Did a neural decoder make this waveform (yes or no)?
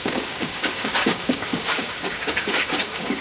yes